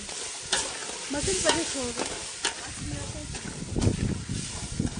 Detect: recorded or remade recorded